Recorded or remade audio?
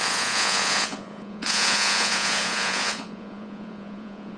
remade